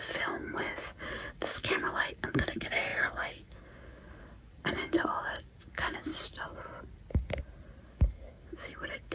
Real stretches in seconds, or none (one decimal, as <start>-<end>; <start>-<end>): 6.1-7.8